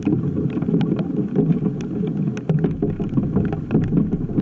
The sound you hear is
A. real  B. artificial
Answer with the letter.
A